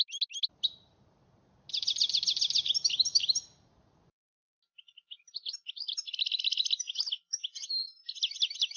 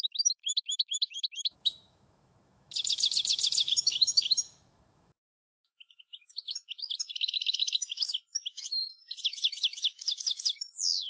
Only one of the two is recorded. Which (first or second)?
first